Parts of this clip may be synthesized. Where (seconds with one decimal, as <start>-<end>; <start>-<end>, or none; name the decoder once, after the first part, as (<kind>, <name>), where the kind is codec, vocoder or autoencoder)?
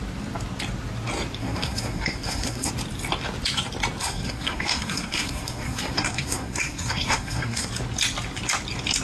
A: 1.4-2.7 (codec, SNAC); 4.0-7.7